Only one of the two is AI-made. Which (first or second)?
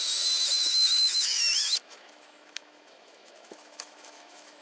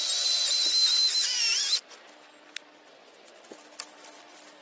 first